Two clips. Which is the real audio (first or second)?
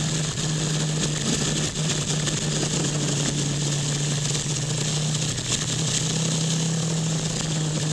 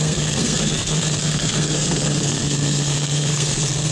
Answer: first